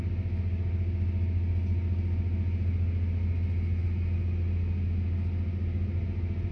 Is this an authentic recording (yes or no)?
yes